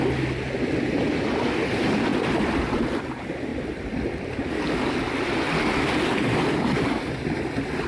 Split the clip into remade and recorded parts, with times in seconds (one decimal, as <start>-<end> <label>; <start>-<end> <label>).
0.0-7.9 recorded